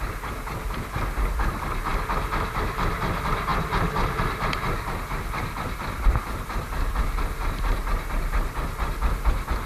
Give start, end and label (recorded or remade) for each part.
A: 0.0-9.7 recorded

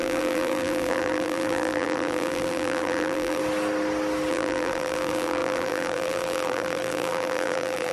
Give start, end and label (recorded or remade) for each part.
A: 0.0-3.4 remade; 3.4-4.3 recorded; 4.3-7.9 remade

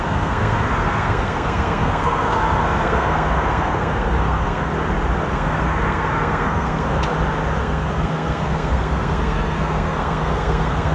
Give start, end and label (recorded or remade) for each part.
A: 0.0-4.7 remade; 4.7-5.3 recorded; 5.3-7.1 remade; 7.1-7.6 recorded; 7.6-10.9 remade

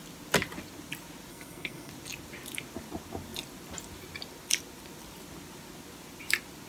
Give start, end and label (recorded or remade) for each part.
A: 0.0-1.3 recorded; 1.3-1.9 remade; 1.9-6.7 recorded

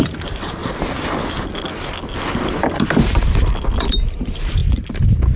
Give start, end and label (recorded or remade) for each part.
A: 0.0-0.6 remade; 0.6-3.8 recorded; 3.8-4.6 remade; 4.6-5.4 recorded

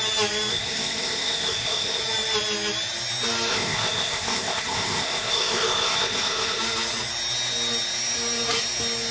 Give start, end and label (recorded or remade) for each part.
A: 0.0-0.5 recorded; 0.5-2.0 remade; 2.0-3.5 recorded; 3.5-6.6 remade; 6.6-9.1 recorded